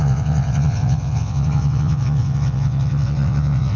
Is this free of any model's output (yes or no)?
no